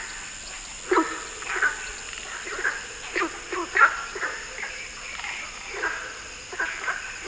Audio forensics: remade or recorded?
recorded